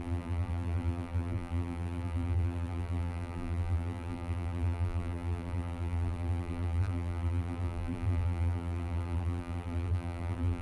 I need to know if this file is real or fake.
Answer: fake